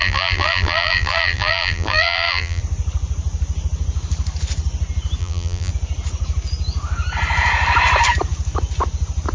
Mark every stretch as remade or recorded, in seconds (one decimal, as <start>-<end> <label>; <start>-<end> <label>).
0.0-2.6 remade; 2.6-5.2 recorded; 5.2-5.7 remade; 5.7-9.3 recorded